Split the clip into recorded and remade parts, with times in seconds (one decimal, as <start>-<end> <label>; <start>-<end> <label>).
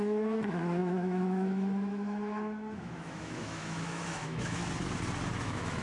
0.0-4.6 remade; 4.6-5.3 recorded; 5.3-5.8 remade